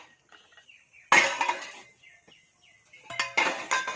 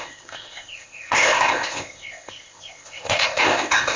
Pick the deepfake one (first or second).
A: second